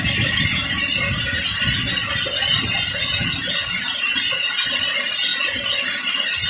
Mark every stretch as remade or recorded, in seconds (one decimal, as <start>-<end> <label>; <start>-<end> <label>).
0.0-6.5 recorded